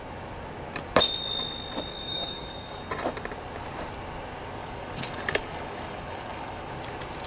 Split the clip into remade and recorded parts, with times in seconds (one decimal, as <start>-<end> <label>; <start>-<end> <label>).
0.0-1.9 recorded; 1.9-2.8 remade; 2.8-4.6 recorded; 4.6-6.7 remade; 6.7-7.3 recorded